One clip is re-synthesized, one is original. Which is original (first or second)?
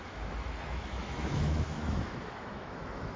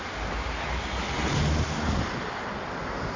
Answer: second